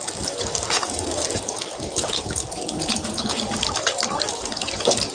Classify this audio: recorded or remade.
remade